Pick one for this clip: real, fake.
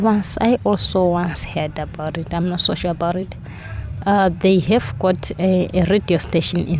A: fake